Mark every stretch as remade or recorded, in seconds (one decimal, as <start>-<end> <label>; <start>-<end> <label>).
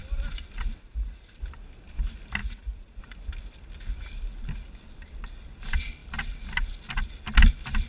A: 0.0-0.8 recorded; 0.8-1.4 remade; 1.4-2.4 recorded; 2.4-3.0 remade; 3.0-7.9 recorded